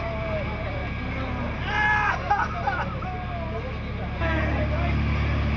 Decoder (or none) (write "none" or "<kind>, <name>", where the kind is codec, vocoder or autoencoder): none